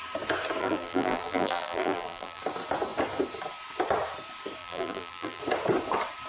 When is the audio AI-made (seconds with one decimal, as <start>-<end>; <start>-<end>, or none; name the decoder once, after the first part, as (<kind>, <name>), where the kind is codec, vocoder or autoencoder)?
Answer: 0.6-2.4 (vocoder, BigVGAN v2); 4.6-5.4